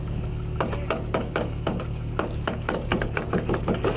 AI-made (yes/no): yes